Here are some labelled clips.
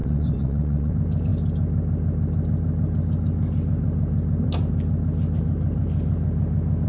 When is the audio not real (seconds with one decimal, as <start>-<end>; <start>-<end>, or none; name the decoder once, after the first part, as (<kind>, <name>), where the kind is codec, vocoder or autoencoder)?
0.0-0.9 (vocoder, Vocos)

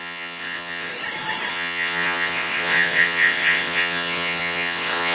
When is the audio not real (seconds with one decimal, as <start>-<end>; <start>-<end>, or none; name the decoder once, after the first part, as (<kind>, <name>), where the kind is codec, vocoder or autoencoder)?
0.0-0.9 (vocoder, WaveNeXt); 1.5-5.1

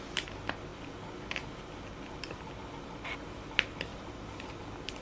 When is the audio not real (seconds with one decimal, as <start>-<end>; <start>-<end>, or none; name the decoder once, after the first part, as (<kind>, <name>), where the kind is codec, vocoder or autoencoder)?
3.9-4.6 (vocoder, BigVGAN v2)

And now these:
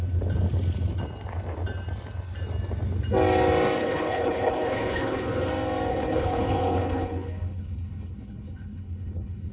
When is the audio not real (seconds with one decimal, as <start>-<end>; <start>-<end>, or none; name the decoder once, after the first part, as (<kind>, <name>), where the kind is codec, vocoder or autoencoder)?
3.8-5.5 (codec, HILCodec); 5.9-9.5

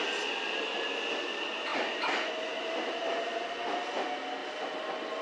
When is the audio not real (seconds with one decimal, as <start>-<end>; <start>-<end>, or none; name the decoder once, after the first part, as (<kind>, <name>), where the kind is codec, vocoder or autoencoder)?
1.7-2.3 (vocoder, BigVGAN v2)